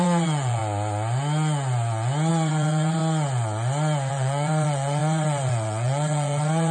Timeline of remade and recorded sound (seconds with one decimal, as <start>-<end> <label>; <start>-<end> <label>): 0.0-0.6 remade; 0.6-2.3 recorded; 2.3-3.0 remade; 3.0-4.1 recorded; 4.1-6.7 remade